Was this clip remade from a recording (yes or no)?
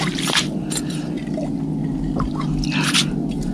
no